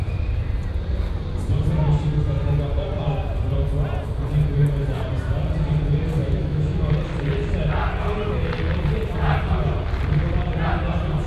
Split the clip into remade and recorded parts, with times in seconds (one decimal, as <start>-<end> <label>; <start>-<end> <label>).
0.0-6.2 recorded; 6.2-6.9 remade; 6.9-11.3 recorded